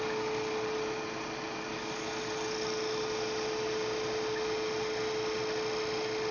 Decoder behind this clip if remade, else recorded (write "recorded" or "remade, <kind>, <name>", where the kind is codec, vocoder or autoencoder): recorded